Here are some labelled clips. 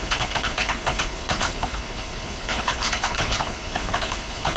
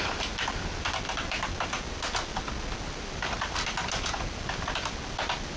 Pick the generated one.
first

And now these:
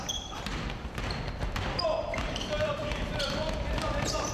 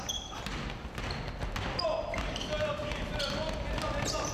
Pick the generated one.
first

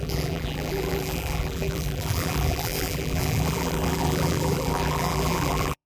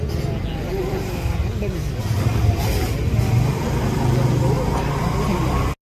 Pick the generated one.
first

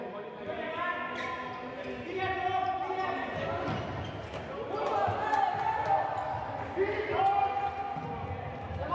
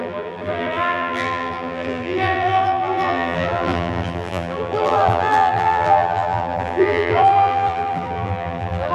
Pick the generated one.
second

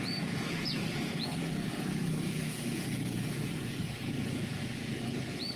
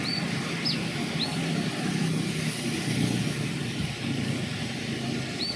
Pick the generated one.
first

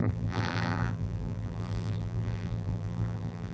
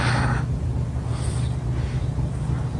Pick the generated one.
first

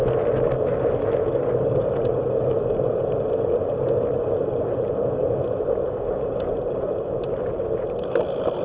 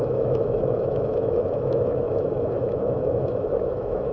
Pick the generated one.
second